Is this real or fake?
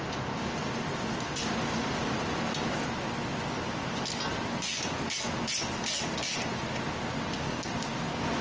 real